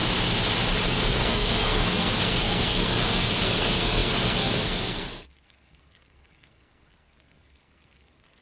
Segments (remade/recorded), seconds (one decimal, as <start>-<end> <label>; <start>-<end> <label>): 0.0-0.9 recorded; 0.9-8.4 remade

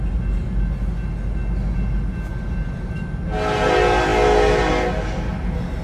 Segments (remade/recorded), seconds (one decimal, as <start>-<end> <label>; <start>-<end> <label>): 0.0-5.8 recorded

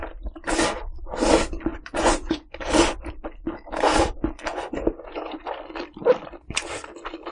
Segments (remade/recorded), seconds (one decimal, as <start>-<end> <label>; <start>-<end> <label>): 0.0-1.7 recorded; 1.7-2.7 remade; 2.7-4.5 recorded; 4.5-5.4 remade; 5.4-7.3 recorded